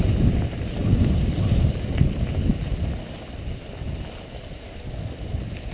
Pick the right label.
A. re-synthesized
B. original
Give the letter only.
B